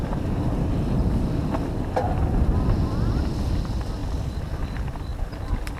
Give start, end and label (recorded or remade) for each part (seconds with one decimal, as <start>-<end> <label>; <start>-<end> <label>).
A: 0.0-4.0 recorded; 4.0-4.6 remade; 4.6-5.8 recorded